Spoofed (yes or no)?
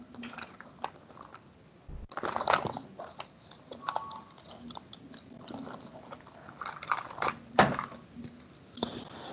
no